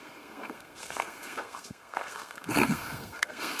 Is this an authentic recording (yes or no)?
no